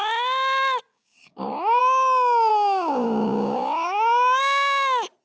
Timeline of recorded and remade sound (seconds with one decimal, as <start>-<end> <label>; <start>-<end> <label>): 0.0-0.9 recorded; 0.9-1.8 remade; 1.8-2.5 recorded; 2.5-4.4 remade; 4.4-5.2 recorded